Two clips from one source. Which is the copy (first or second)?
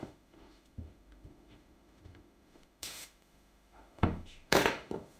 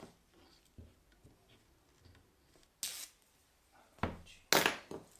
first